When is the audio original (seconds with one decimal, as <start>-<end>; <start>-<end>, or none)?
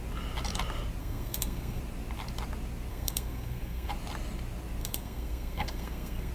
0.0-1.0; 1.8-2.9; 3.9-4.8